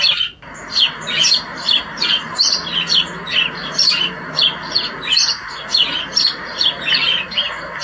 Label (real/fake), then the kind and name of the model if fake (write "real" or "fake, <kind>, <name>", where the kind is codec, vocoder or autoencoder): real